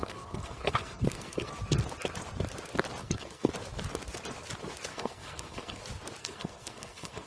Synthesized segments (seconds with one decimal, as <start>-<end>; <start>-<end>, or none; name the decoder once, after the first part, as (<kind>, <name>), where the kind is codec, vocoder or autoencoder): 0.0-1.5 (codec, SNAC); 3.0-3.5; 4.9-5.8; 6.2-7.3